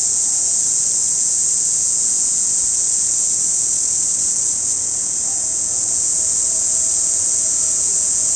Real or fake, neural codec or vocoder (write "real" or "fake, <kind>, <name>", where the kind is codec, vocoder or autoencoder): fake, vocoder, Vocos